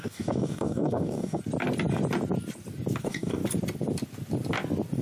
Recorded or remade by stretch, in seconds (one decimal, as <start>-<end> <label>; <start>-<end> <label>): 0.0-1.4 remade; 1.4-3.0 recorded; 3.0-3.4 remade; 3.4-5.0 recorded